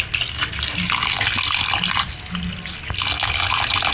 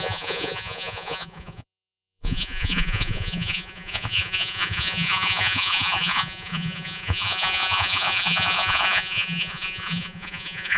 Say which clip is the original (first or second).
first